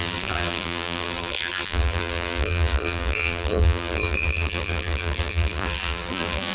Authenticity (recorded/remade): remade